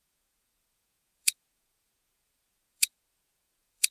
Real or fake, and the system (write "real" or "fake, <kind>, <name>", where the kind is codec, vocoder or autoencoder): fake, vocoder, Vocos